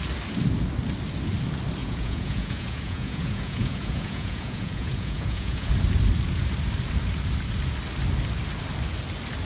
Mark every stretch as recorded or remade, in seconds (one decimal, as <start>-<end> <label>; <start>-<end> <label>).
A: 0.0-1.8 recorded; 1.8-5.7 remade; 5.7-9.5 recorded